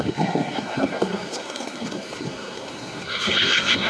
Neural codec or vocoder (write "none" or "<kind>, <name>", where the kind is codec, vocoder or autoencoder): codec, SNAC